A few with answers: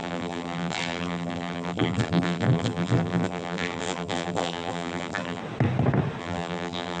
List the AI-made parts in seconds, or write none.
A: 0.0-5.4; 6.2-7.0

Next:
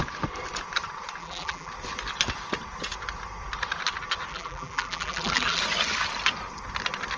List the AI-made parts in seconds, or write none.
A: 1.2-1.7; 4.3-5.6

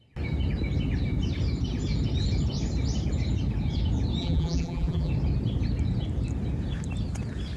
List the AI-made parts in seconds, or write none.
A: 4.2-5.1

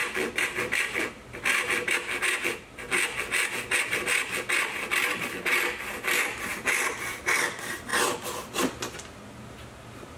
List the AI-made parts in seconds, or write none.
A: 0.0-0.6; 3.9-4.9

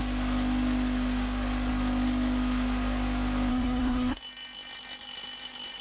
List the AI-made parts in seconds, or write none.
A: 3.5-4.2